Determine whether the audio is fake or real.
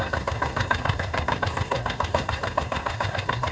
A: fake